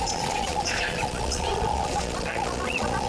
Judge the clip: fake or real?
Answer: fake